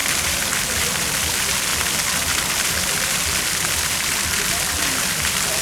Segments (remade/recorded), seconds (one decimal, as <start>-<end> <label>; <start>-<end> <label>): 0.0-5.6 recorded